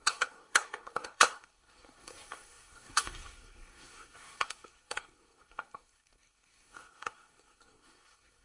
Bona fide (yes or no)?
no